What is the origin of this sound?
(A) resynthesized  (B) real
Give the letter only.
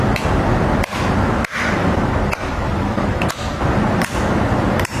A